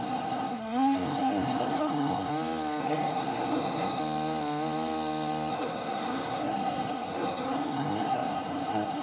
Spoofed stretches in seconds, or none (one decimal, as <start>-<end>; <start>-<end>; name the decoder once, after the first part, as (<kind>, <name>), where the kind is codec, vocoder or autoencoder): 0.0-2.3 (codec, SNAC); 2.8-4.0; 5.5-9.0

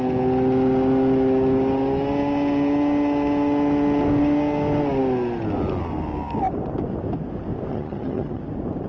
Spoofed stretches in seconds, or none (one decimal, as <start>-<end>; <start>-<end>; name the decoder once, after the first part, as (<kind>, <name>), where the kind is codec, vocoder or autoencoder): 7.7-8.4 (vocoder, HiFi-GAN)

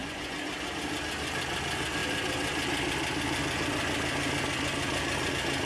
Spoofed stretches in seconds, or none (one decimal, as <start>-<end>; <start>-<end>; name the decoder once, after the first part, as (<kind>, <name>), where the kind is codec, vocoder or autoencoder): 0.0-0.5 (vocoder, Vocos)

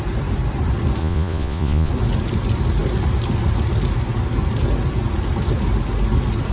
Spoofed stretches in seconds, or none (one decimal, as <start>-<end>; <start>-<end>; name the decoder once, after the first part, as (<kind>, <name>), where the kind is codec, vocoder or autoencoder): 1.0-1.9 (vocoder, Vocos)